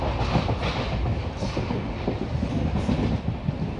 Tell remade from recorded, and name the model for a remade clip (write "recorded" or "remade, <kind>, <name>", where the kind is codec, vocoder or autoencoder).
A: recorded